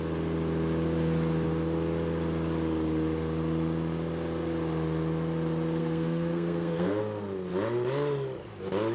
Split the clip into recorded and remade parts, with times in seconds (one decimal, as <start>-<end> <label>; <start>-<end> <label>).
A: 0.0-5.8 recorded; 5.8-7.0 remade; 7.0-8.9 recorded